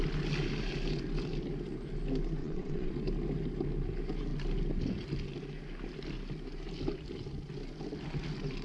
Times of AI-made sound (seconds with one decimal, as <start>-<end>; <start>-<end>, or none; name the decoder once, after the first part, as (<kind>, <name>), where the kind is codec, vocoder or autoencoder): 2.4-2.9 (vocoder, WaveNeXt)